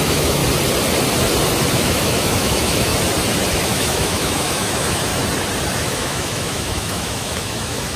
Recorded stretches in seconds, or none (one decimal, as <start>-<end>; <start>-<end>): 0.4-1.7; 2.9-3.5; 5.1-5.8